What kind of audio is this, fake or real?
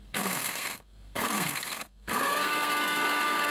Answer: fake